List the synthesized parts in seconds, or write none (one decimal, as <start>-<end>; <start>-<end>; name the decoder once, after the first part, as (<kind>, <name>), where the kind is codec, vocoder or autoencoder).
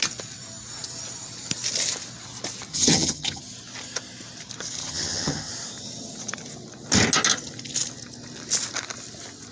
2.7-3.4 (vocoder, HiFi-GAN); 4.8-5.5